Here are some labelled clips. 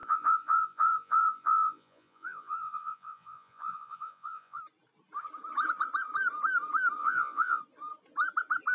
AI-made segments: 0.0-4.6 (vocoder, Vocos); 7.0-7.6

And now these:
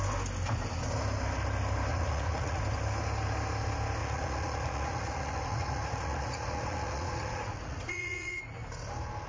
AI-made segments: 1.9-2.6 (vocoder, Vocos); 4.0-8.4

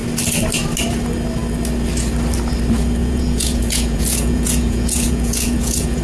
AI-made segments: 3.0-6.0 (vocoder, Vocos)

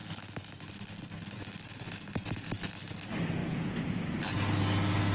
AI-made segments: 3.4-4.1 (vocoder, Vocos)

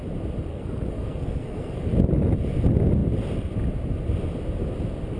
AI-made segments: 0.5-1.9 (codec, SNAC)